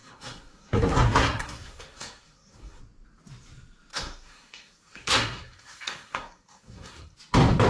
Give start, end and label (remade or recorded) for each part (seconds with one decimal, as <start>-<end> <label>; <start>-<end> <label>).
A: 0.0-2.8 remade; 2.8-3.9 recorded; 3.9-7.2 remade; 7.2-7.7 recorded